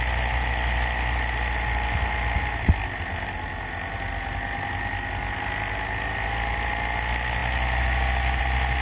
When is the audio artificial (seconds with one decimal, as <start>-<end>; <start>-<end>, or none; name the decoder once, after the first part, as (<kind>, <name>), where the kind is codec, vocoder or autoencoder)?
none